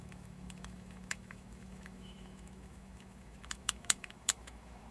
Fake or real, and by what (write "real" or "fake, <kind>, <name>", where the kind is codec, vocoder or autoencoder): fake, autoencoder, DAC-VAE